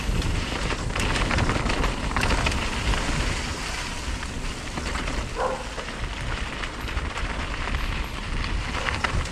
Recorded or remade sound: recorded